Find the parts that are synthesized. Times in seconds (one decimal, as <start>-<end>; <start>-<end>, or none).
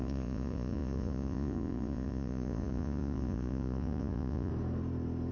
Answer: 0.0-4.5